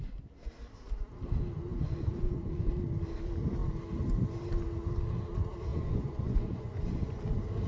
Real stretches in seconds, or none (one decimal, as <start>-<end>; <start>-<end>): 0.0-1.7; 2.7-5.7; 7.2-7.7